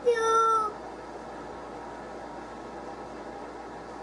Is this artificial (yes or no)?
no